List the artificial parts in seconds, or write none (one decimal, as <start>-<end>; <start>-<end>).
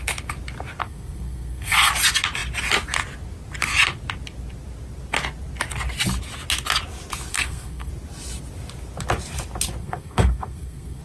0.8-1.9; 7.3-7.9; 9.8-11.0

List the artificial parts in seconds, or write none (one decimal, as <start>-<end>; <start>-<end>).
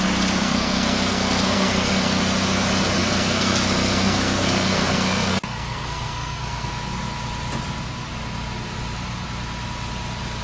0.4-2.2; 3.0-6.7